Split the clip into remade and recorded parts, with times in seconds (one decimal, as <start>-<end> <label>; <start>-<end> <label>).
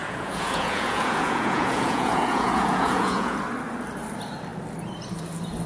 0.0-3.4 remade; 3.4-5.7 recorded